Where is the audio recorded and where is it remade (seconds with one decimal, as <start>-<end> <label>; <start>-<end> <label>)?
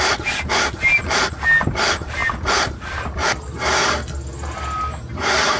0.0-5.6 recorded